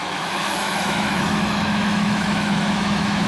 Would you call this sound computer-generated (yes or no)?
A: yes